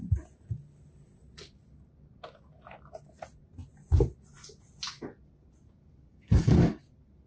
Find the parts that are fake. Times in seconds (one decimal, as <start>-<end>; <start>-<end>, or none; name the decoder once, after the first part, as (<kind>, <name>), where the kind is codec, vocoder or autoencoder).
6.1-6.8 (codec, DAC)